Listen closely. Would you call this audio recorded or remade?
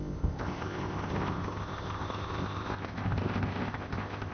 remade